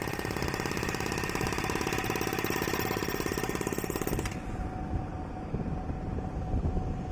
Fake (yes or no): no